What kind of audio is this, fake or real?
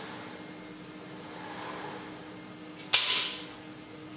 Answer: real